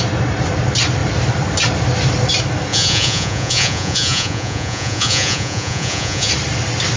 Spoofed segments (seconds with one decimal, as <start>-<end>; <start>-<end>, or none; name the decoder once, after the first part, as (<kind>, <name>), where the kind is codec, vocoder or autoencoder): 2.7-6.3 (vocoder, Vocos)